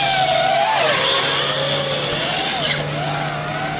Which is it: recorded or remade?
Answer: recorded